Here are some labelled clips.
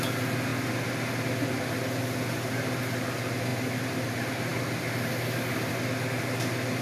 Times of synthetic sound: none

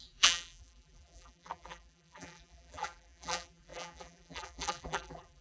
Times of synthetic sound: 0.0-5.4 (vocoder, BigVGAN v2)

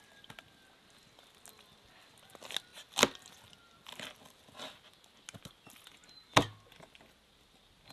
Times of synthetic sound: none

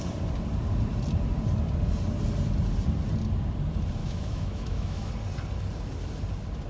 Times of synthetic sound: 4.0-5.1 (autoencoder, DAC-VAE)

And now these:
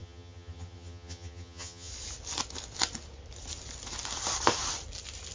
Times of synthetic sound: 0.0-1.9 (vocoder, HiFi-GAN)

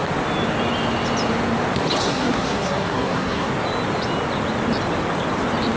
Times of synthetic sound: 2.0-3.5 (codec, SNAC)

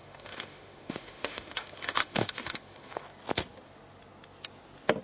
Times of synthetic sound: 0.0-3.0 (autoencoder, DAC-VAE)

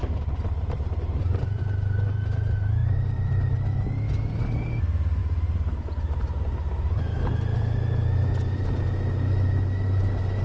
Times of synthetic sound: 0.0-1.6 (vocoder, BigVGAN v2); 2.8-3.5